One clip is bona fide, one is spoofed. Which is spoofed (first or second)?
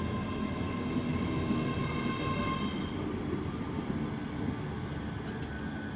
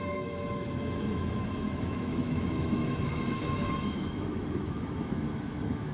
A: second